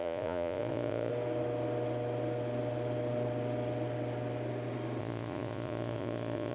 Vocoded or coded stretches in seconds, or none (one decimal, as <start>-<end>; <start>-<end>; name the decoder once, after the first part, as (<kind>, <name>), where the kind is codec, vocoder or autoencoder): 0.0-1.1 (vocoder, Vocos); 5.0-6.5

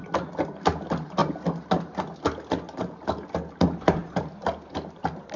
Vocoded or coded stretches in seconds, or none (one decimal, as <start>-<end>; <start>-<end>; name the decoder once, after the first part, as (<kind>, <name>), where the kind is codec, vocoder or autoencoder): none

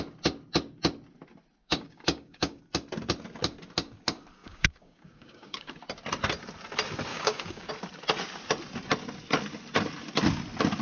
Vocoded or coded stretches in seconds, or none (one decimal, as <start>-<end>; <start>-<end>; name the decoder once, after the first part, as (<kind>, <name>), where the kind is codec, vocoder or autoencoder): 1.6-2.6 (codec, DAC); 4.4-5.8; 7.1-7.7

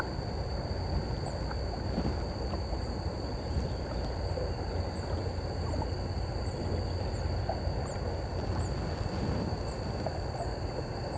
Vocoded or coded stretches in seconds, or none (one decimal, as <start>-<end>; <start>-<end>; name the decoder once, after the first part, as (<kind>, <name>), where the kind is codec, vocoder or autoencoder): none